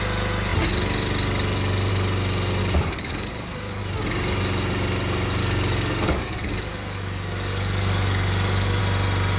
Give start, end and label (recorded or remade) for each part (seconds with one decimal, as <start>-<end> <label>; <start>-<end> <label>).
0.0-2.6 recorded; 2.6-3.8 remade; 3.8-5.4 recorded; 5.4-8.8 remade; 8.8-9.4 recorded